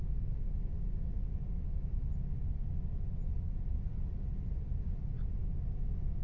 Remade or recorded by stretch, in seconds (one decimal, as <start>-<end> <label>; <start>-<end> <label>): 0.0-6.2 recorded